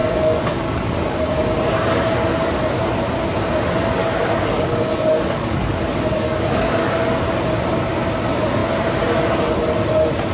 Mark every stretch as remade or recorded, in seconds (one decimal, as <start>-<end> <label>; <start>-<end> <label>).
0.0-1.3 remade; 1.3-4.0 recorded; 4.0-7.0 remade; 7.0-10.3 recorded